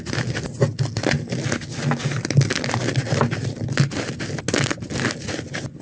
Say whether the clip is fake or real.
real